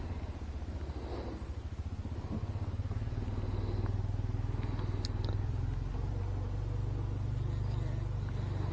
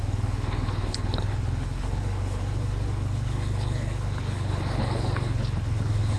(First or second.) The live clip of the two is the first